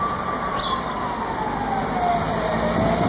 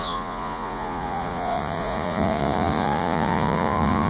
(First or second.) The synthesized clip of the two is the second